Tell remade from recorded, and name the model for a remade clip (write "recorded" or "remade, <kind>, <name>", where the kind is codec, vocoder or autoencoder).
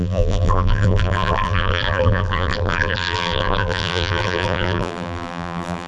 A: remade, vocoder, BigVGAN v2